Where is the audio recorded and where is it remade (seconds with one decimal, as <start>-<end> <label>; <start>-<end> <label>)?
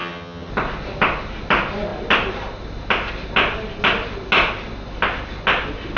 0.0-0.5 remade; 0.5-6.0 recorded